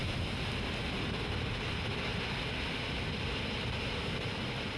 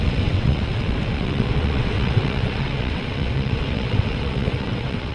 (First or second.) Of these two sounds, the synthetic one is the second